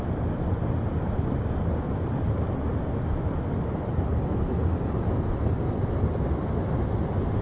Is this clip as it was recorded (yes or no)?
yes